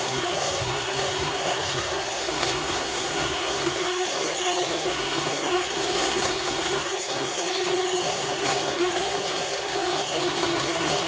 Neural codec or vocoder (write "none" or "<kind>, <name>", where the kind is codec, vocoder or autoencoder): codec, SNAC